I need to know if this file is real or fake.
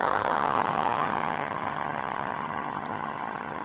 fake